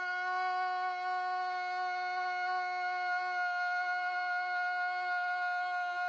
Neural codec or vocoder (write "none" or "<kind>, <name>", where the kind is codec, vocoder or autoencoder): none